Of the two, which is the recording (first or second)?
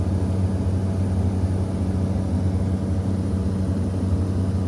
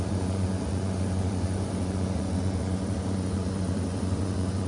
first